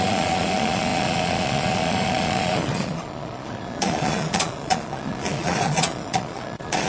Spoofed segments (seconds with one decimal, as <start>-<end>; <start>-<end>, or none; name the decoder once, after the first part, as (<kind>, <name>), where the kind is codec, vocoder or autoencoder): 0.0-6.9 (vocoder, Vocos)